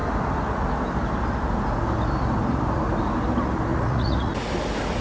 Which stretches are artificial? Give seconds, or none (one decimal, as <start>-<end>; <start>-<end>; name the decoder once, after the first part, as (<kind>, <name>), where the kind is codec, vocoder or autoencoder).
3.7-4.3 (vocoder, Vocos)